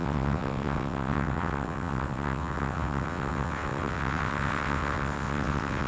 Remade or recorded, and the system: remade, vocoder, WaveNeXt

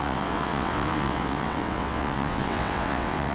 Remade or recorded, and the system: remade, vocoder, WaveNeXt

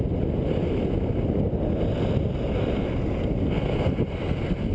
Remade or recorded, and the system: recorded